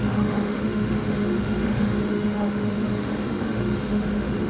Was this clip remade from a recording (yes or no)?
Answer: yes